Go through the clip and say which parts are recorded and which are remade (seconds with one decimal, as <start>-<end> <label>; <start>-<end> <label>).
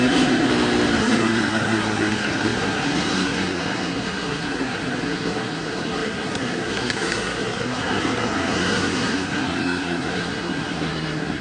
0.0-0.5 remade; 0.5-1.0 recorded; 1.0-11.4 remade